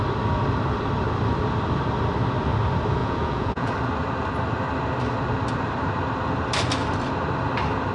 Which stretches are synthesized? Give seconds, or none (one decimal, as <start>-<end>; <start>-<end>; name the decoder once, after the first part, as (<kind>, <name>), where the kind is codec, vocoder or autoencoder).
3.0-3.7 (vocoder, Vocos)